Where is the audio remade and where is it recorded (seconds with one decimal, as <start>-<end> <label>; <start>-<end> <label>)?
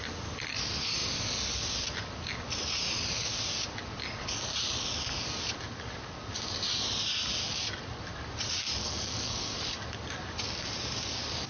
0.0-8.8 recorded; 8.8-9.6 remade; 9.6-11.5 recorded